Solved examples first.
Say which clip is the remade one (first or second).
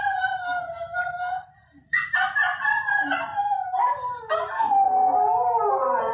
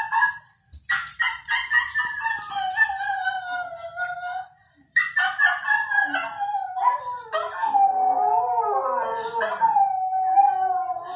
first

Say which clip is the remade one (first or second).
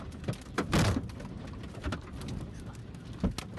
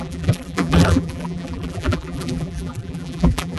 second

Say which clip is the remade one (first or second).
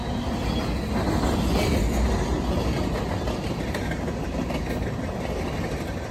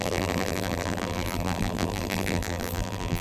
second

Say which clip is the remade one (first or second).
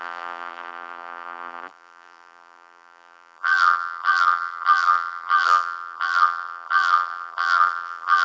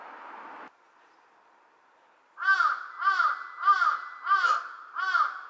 first